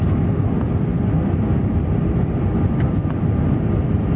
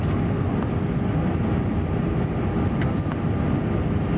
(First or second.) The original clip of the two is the second